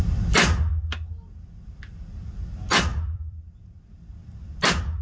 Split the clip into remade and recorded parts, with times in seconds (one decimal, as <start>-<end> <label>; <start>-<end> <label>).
0.0-2.9 recorded; 2.9-3.4 remade; 3.4-5.0 recorded